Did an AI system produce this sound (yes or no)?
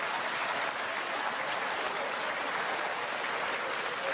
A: no